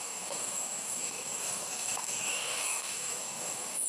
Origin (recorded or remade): remade